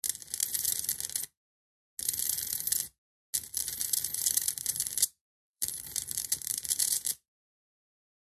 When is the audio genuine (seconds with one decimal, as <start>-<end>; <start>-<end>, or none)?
0.0-3.6; 7.8-8.3